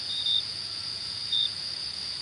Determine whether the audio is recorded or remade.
remade